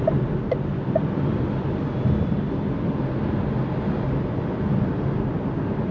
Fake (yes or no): yes